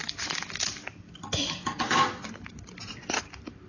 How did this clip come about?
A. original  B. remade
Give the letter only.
A